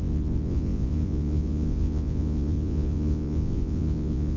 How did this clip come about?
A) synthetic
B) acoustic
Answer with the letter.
A